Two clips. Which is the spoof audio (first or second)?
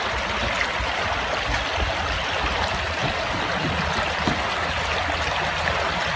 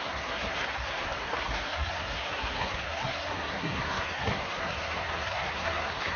second